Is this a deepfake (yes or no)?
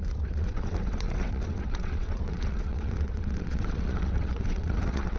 yes